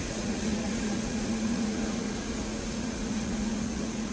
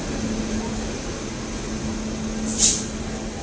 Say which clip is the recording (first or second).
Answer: second